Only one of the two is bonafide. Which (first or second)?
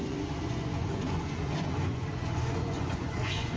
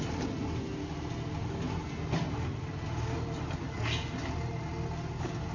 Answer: second